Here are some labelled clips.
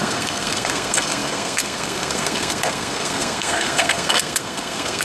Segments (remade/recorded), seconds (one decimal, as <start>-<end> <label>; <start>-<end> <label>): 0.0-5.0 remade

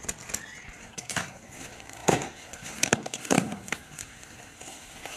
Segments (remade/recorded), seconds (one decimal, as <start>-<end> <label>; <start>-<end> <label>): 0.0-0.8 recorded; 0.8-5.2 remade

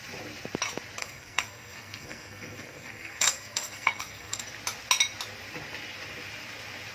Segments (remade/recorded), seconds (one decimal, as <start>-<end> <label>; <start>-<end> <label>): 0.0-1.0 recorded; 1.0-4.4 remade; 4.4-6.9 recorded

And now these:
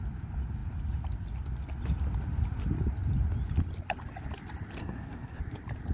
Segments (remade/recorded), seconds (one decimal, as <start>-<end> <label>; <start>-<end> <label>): 0.0-4.8 recorded; 4.8-5.4 remade; 5.4-5.9 recorded